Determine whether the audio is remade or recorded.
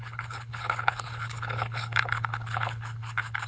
remade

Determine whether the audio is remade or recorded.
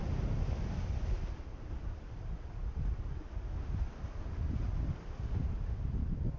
recorded